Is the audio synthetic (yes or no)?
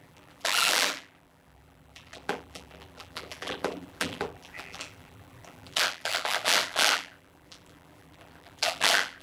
yes